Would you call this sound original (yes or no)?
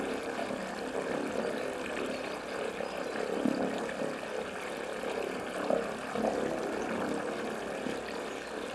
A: yes